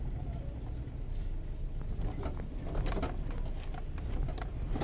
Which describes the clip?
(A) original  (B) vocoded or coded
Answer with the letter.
A